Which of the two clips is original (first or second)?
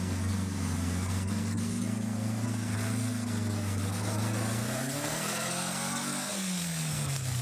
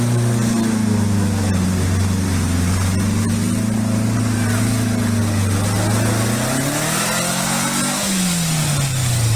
second